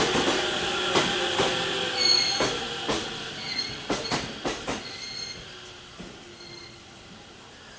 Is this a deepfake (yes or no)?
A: no